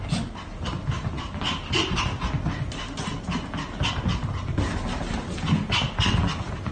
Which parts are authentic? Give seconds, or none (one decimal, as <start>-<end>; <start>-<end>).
0.0-6.7